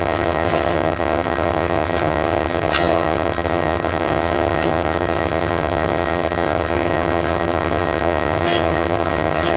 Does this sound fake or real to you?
fake